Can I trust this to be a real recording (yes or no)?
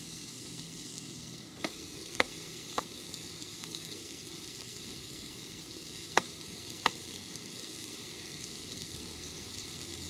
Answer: no